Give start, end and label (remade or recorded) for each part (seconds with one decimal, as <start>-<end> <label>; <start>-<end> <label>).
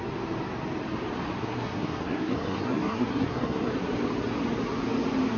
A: 0.0-1.4 recorded; 1.4-3.7 remade; 3.7-5.4 recorded